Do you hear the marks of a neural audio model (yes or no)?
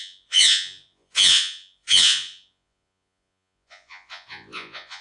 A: yes